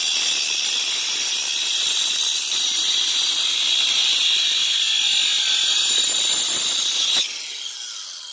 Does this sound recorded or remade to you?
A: recorded